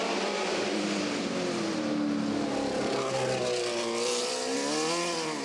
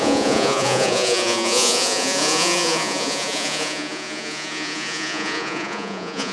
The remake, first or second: second